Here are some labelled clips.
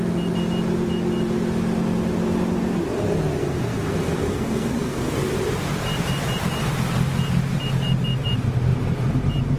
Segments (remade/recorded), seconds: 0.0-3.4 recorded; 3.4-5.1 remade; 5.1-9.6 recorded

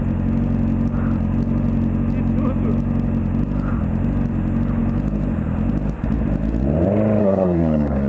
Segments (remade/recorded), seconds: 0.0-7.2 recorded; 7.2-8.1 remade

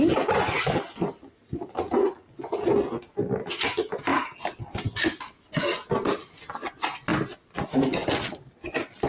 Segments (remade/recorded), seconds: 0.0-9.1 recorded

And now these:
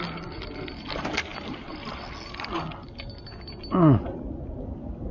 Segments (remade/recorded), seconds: 0.0-5.1 recorded